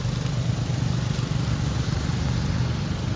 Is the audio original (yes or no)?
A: yes